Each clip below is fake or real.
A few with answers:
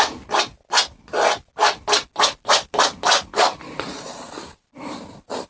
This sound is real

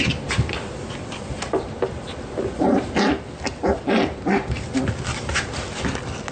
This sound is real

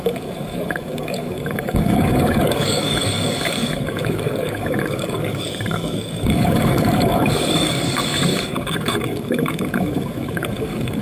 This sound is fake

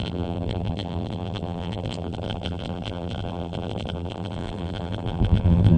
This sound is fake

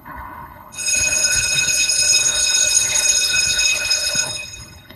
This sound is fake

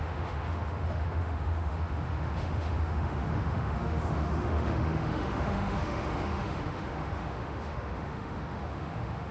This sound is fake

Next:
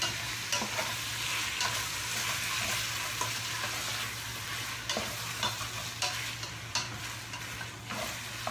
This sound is real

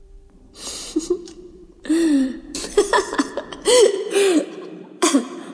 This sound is fake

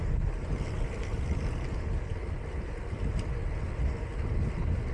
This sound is real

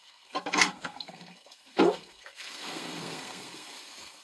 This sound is fake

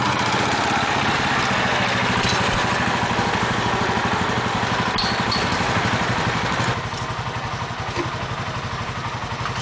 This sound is real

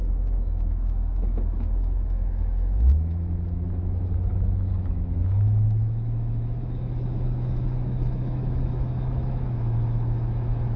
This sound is fake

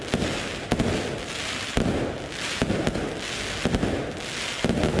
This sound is real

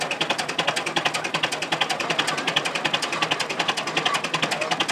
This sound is real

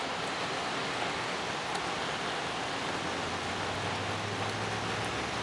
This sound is real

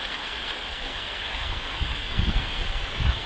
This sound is fake